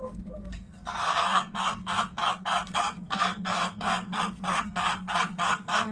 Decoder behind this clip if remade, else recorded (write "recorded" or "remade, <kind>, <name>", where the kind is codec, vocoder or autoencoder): remade, codec, SNAC